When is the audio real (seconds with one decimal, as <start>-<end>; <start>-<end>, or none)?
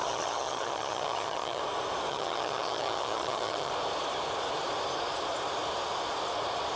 1.6-2.1; 3.7-6.8